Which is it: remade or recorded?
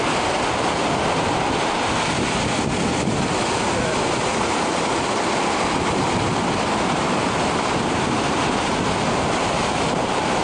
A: recorded